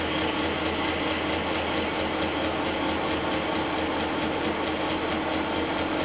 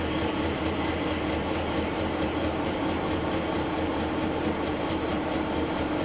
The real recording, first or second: first